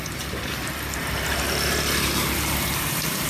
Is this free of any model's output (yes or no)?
no